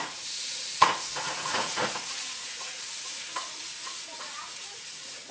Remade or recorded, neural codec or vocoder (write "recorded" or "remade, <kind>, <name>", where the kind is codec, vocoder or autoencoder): remade, vocoder, Vocos